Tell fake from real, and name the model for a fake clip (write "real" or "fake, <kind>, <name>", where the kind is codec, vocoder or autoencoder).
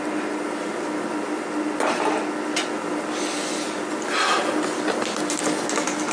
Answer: real